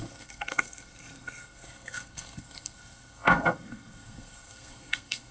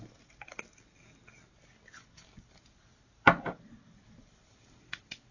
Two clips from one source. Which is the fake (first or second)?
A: first